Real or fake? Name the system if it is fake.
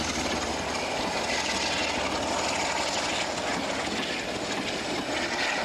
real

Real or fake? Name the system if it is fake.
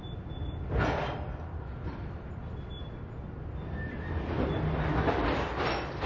real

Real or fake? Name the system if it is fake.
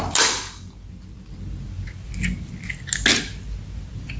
real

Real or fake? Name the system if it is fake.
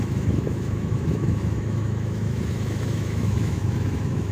fake, autoencoder, DAC-VAE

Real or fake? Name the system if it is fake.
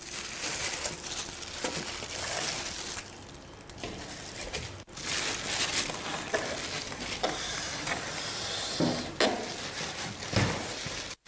real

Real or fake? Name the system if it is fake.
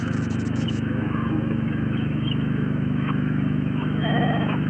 fake, autoencoder, DAC-VAE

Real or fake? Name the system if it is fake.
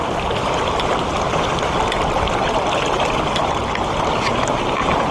real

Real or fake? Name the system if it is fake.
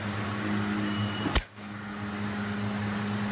real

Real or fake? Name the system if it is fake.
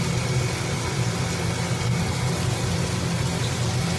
real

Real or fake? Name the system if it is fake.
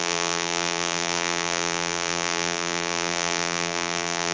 fake, vocoder, BigVGAN v2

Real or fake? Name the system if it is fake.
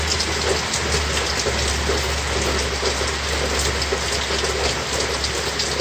real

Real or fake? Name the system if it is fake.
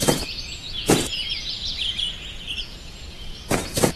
fake, vocoder, Vocos